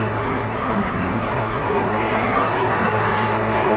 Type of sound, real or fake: fake